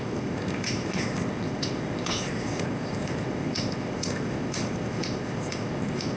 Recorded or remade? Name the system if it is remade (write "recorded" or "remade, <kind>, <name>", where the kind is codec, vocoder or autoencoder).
remade, codec, ZipCodec